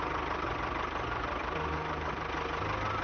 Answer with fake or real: real